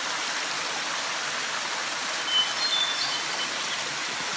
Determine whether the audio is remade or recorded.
recorded